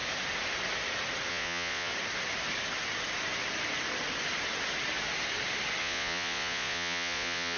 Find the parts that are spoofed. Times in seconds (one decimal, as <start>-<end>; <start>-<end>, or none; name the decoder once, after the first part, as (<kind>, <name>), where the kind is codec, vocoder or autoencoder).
1.3-1.9 (vocoder, Vocos); 5.8-7.6